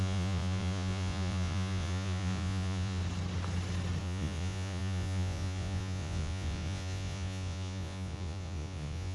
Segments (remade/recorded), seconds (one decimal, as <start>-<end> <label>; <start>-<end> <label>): 0.0-3.0 remade; 3.0-4.0 recorded; 4.0-9.1 remade